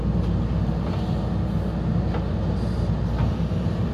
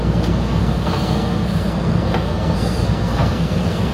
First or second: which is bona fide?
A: first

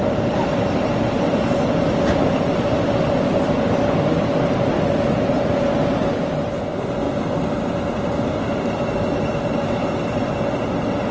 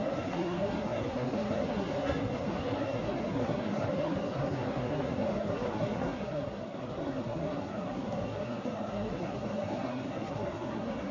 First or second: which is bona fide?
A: first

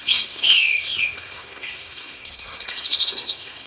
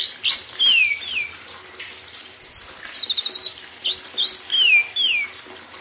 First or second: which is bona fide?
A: second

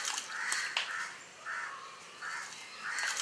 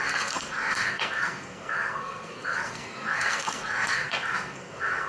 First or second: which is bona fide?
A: first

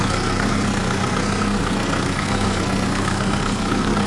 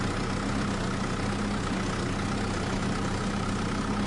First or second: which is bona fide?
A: second